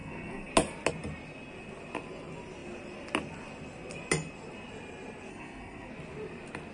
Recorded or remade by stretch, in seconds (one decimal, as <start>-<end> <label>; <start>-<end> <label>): 0.0-0.5 remade; 0.5-5.3 recorded; 5.3-5.9 remade; 5.9-6.7 recorded